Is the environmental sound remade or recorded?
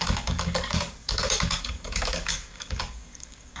remade